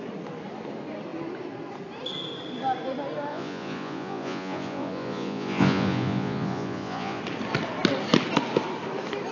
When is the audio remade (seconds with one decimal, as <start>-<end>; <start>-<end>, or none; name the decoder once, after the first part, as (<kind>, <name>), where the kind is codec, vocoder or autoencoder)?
3.3-7.2 (vocoder, Vocos)